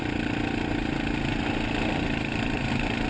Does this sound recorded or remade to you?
recorded